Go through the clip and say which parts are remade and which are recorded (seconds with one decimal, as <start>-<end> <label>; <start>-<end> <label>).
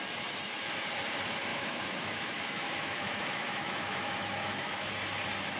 0.0-1.5 recorded; 1.5-4.9 remade; 4.9-5.6 recorded